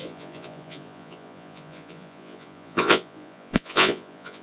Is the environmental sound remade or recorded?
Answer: remade